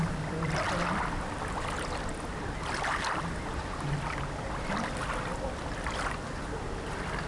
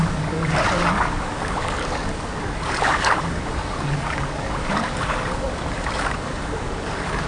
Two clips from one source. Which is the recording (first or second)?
first